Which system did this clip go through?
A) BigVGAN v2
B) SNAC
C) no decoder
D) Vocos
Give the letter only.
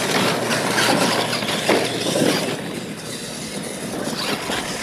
C